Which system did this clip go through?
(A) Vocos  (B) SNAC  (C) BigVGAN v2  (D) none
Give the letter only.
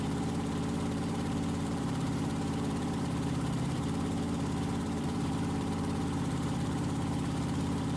C